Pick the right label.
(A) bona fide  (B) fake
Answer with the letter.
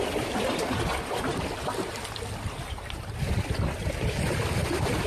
B